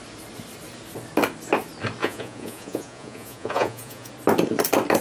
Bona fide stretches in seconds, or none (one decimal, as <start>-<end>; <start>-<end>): 0.0-2.0; 4.1-5.0